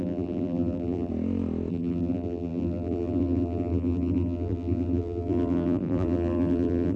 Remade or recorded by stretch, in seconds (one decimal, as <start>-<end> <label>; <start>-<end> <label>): 0.0-1.1 remade; 1.1-1.7 recorded; 1.7-7.0 remade